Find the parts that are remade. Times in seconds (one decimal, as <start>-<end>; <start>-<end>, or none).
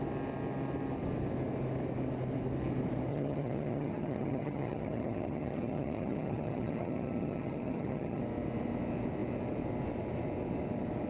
3.1-8.2